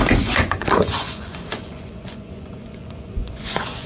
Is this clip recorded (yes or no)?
no